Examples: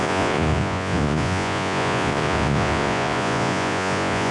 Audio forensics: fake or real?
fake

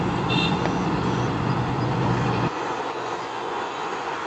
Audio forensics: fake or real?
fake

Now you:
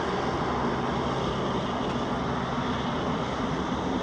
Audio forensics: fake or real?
real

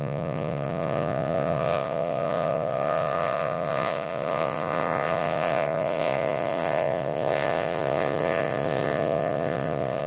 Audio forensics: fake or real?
fake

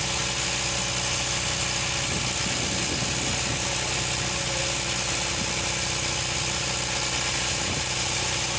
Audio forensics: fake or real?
real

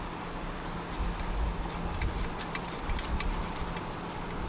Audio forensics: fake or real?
real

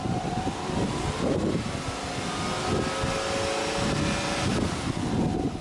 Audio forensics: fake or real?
real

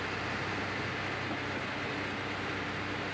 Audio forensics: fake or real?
real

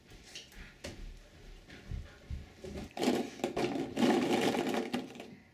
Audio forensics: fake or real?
real